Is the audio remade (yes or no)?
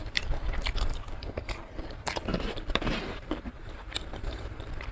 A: yes